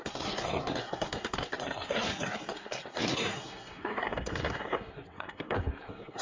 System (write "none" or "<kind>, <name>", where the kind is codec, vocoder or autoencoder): codec, SNAC